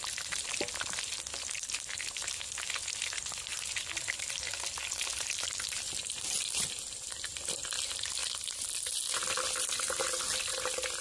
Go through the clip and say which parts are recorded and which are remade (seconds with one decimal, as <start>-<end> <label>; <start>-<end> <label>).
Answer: 0.0-11.0 recorded